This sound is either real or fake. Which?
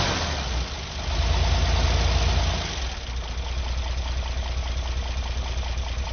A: real